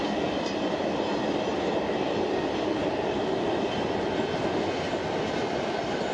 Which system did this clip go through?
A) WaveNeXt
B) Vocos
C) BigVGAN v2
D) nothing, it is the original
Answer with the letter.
D